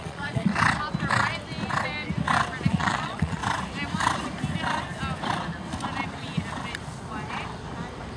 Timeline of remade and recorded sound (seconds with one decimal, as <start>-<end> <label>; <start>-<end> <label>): 0.0-0.5 remade; 0.5-2.7 recorded; 2.7-3.4 remade; 3.4-8.2 recorded